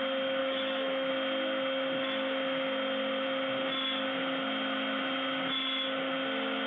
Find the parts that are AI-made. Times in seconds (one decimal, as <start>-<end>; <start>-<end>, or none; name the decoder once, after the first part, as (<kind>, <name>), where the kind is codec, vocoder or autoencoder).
0.4-1.1 (autoencoder, DAC-VAE)

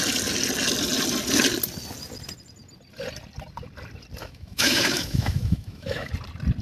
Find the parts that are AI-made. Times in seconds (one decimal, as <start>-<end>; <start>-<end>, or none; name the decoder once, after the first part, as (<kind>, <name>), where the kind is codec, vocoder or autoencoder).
4.2-6.1 (autoencoder, DAC-VAE)

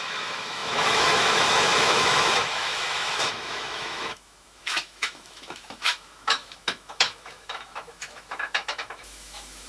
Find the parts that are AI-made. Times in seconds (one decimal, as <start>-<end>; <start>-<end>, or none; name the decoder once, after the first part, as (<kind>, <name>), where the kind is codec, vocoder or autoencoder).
0.0-9.7 (autoencoder, DAC-VAE)

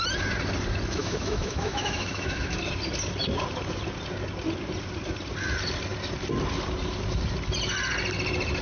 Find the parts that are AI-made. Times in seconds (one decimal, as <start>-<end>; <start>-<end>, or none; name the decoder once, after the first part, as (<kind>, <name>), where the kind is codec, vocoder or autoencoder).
1.0-2.6 (autoencoder, DAC-VAE)

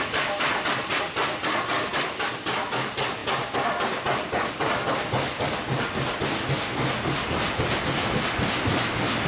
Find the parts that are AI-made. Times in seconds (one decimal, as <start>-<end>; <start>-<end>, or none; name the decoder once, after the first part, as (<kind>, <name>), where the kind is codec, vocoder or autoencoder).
none

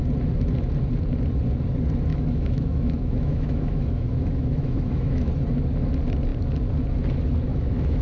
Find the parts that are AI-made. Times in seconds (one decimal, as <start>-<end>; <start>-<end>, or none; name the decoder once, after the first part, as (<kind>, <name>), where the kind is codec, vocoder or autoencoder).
2.1-5.3 (autoencoder, DAC-VAE); 7.5-8.0

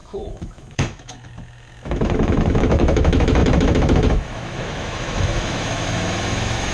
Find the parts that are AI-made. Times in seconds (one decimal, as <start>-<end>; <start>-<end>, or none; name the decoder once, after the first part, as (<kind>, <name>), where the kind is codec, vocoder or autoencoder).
0.0-6.7 (autoencoder, DAC-VAE)

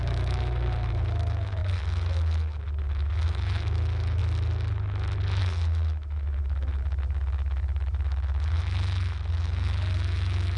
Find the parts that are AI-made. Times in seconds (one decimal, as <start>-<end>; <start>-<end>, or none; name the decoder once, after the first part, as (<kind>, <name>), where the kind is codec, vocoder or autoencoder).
0.0-4.2 (autoencoder, DAC-VAE); 5.4-10.6